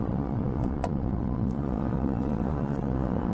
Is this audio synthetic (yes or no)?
yes